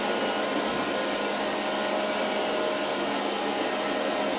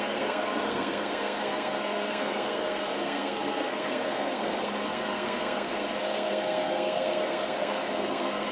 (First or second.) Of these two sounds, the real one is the first